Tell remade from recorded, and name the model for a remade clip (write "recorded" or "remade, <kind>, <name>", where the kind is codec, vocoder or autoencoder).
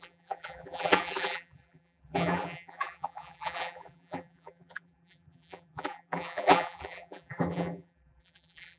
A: remade, vocoder, BigVGAN v2